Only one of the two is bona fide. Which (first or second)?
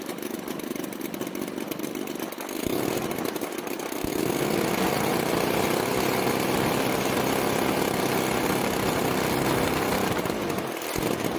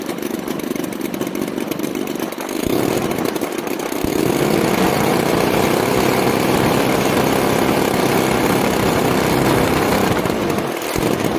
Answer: first